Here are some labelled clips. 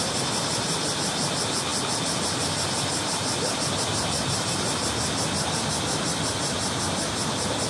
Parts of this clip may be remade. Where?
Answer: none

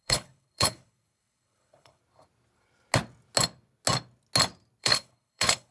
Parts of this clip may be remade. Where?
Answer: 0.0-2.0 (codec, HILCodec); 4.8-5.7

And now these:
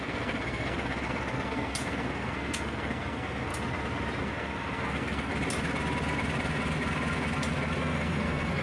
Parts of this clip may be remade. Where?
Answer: 0.0-3.5 (codec, SNAC); 4.2-5.3; 7.8-8.6

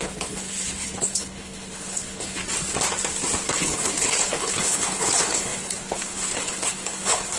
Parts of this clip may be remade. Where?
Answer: 0.0-2.4 (codec, HILCodec); 3.5-7.4